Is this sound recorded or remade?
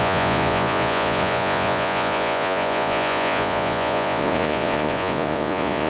remade